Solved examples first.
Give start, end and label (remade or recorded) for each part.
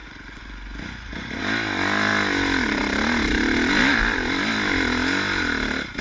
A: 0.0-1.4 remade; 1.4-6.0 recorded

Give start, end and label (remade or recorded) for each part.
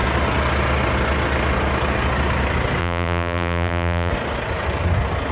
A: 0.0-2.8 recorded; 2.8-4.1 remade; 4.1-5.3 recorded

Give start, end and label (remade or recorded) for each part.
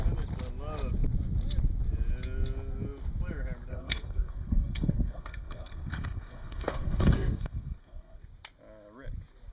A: 0.0-3.7 recorded; 3.7-8.2 remade; 8.2-9.5 recorded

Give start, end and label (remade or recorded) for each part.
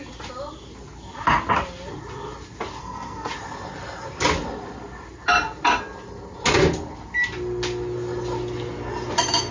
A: 0.0-2.8 recorded; 2.8-3.3 remade; 3.3-9.5 recorded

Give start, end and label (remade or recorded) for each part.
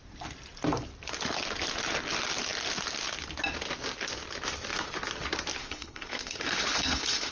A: 0.0-5.6 recorded; 5.6-7.3 remade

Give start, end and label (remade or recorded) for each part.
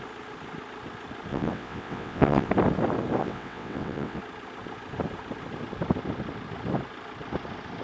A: 0.0-1.3 recorded; 1.3-2.5 remade; 2.5-3.2 recorded; 3.2-4.2 remade; 4.2-7.8 recorded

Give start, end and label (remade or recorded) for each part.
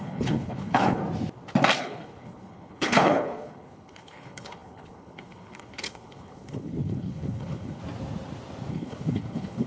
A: 0.0-1.0 remade; 1.0-1.8 recorded; 1.8-7.8 remade; 7.8-8.7 recorded; 8.7-9.7 remade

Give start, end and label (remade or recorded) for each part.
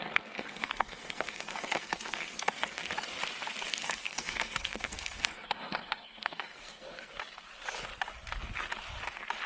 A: 0.0-2.9 remade; 2.9-3.7 recorded; 3.7-7.1 remade; 7.1-9.5 recorded